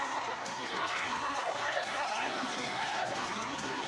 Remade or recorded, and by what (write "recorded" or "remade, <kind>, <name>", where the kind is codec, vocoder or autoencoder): remade, codec, SNAC